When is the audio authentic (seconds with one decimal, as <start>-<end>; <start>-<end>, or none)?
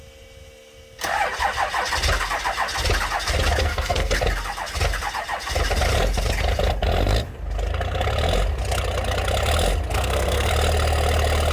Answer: 0.0-3.6; 4.2-9.9; 10.5-11.5